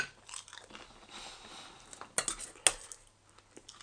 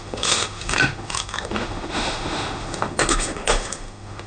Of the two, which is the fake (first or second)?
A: second